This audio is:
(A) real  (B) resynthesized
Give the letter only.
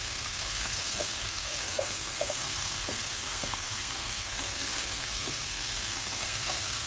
B